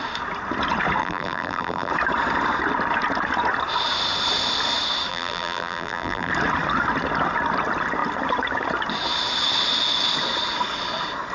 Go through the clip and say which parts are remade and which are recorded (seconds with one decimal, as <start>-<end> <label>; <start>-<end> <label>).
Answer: 0.0-1.0 recorded; 1.0-1.9 remade; 1.9-5.1 recorded; 5.1-6.3 remade; 6.3-11.3 recorded